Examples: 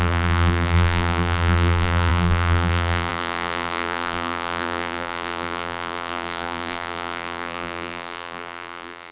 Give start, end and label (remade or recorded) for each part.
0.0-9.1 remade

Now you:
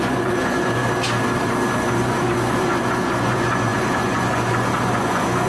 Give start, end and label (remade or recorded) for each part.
0.0-0.8 remade; 0.8-1.8 recorded; 1.8-5.5 remade